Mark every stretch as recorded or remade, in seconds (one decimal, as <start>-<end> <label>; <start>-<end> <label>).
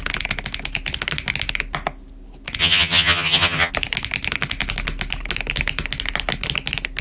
0.0-2.6 recorded; 2.6-3.7 remade; 3.7-7.0 recorded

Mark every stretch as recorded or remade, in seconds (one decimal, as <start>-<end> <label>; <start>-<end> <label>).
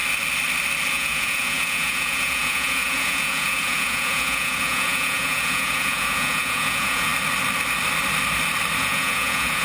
0.0-0.9 recorded; 0.9-7.1 remade; 7.1-8.8 recorded; 8.8-9.6 remade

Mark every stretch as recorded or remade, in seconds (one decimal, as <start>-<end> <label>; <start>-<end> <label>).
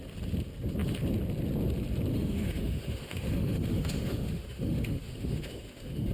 0.0-2.1 recorded; 2.1-6.1 remade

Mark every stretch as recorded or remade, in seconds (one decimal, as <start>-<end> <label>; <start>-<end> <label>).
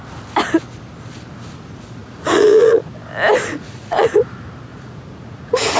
0.0-2.0 recorded; 2.0-2.9 remade; 2.9-3.5 recorded; 3.5-4.1 remade; 4.1-4.7 recorded; 4.7-5.8 remade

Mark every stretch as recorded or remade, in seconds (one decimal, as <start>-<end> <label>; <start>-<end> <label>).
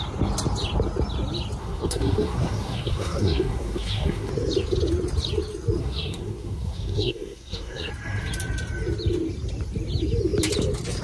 0.0-1.6 recorded; 1.6-4.3 remade; 4.3-5.8 recorded; 5.8-7.9 remade; 7.9-11.0 recorded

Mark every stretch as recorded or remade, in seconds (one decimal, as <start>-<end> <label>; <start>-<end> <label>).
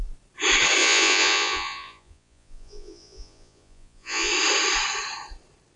0.0-0.8 recorded; 0.8-4.3 remade; 4.3-5.8 recorded